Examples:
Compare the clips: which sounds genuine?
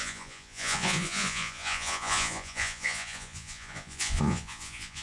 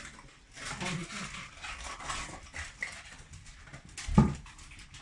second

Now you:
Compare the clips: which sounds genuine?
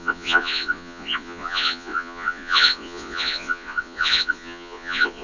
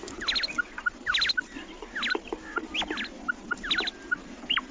second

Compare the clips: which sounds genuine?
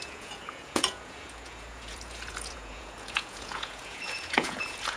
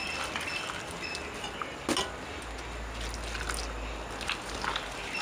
second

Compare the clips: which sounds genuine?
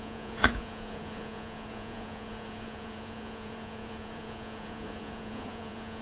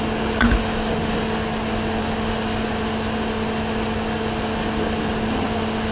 second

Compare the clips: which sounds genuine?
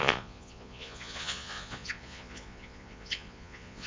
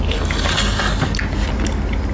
second